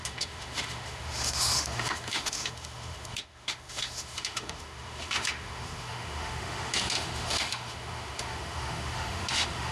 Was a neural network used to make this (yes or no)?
yes